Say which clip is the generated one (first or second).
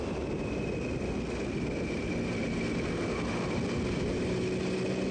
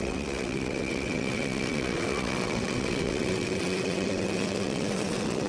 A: second